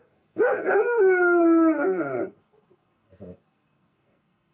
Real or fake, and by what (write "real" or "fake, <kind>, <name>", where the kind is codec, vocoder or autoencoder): fake, codec, SNAC